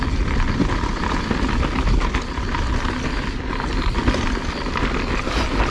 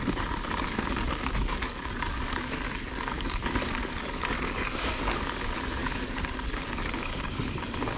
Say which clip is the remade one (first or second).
second